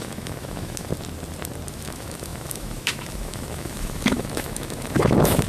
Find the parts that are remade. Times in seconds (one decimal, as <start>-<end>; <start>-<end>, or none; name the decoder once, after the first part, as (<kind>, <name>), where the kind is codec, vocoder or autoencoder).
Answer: 0.0-0.9 (autoencoder, DAC-VAE); 1.7-5.5